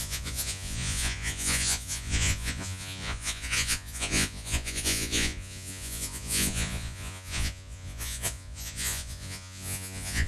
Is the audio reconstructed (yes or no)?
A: yes